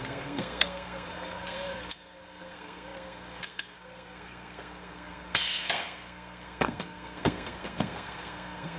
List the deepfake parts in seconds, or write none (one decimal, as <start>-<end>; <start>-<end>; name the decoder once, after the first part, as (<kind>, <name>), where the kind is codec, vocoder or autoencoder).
0.0-8.8 (codec, SNAC)